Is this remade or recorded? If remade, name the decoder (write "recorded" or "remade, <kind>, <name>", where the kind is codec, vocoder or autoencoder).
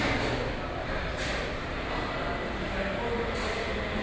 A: recorded